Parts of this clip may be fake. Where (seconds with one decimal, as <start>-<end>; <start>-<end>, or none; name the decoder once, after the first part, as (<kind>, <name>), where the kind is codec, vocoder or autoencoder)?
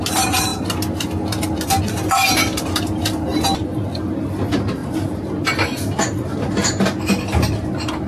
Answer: 4.8-5.5 (vocoder, BigVGAN v2)